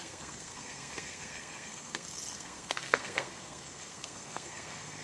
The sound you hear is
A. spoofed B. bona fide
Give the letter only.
A